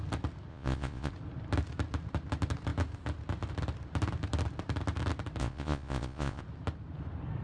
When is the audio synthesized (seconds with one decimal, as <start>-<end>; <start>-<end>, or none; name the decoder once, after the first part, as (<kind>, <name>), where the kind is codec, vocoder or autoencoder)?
0.5-1.1 (vocoder, Vocos); 5.4-6.4